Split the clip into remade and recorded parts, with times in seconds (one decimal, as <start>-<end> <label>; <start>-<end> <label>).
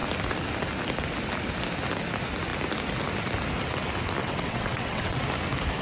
0.0-4.2 recorded; 4.2-5.2 remade; 5.2-5.8 recorded